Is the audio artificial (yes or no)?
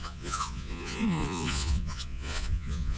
yes